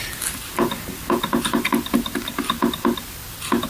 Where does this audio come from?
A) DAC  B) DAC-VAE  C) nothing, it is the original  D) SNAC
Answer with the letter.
C